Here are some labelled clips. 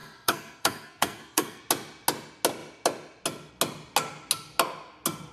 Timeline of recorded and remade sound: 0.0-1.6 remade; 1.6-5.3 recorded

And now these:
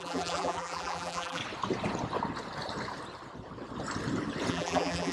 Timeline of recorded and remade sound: 0.0-1.4 remade; 1.4-4.5 recorded; 4.5-5.1 remade